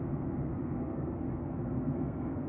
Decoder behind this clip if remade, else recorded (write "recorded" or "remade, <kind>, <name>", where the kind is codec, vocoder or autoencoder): remade, codec, SNAC